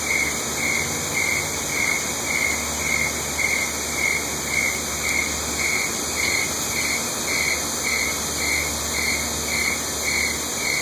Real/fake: real